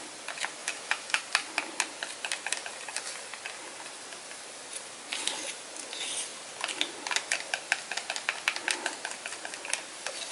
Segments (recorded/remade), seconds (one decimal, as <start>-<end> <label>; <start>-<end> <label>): 0.0-0.6 recorded; 0.6-1.2 remade; 1.2-10.3 recorded